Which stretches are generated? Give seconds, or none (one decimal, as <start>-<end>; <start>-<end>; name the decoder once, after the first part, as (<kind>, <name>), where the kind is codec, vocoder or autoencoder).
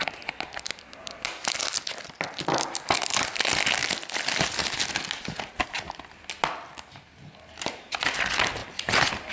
none